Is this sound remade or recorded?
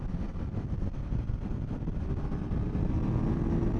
recorded